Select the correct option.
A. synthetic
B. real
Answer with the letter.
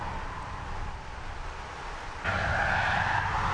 B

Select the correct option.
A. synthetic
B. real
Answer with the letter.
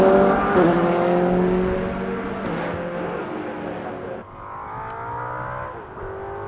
B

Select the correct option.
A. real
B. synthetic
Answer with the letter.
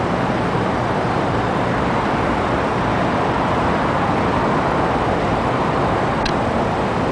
B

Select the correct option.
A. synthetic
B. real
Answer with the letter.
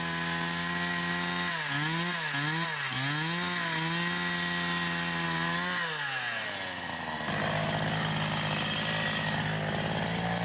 B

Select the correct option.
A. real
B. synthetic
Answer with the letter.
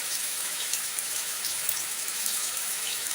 B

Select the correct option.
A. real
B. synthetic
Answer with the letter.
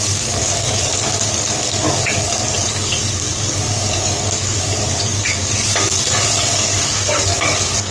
B